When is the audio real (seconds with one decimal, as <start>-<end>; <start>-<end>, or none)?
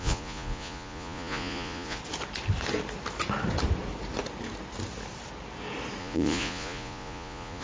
2.0-6.0